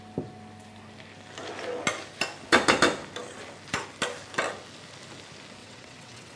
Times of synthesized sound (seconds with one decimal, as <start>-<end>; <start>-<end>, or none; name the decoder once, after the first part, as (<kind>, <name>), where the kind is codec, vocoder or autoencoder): 5.6-6.4 (vocoder, WaveNeXt)